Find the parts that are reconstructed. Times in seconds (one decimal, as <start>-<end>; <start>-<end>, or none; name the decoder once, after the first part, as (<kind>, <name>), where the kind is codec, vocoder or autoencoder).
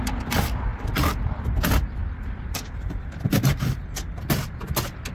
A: 0.7-1.4 (vocoder, BigVGAN v2); 2.0-4.2